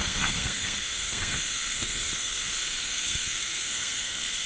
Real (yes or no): no